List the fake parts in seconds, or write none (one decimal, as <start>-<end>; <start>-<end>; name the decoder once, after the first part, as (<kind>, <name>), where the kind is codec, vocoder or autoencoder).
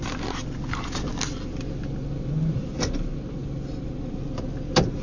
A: none